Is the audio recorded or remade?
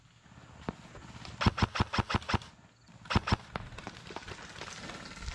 recorded